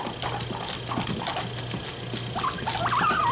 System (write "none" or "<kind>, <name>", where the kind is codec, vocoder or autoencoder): none